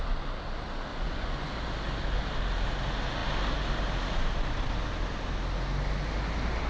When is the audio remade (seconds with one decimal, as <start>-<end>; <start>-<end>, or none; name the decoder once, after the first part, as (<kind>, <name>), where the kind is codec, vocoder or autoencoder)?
0.9-1.5 (vocoder, Vocos)